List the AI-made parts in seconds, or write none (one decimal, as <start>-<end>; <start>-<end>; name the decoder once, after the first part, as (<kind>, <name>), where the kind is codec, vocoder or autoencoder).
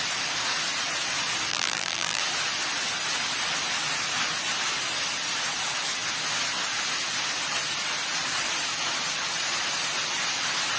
1.5-2.2 (vocoder, BigVGAN v2)